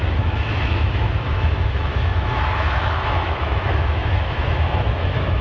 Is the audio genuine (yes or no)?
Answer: no